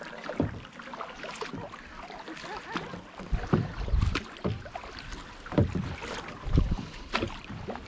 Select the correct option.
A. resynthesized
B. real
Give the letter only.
B